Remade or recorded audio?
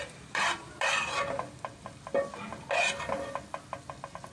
recorded